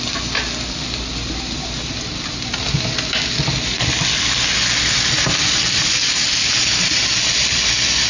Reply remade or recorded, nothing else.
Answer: recorded